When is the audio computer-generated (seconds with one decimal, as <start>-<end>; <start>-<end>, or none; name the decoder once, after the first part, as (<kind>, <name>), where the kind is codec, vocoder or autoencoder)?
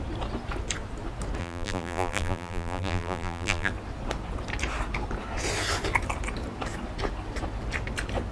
1.4-3.7 (vocoder, BigVGAN v2)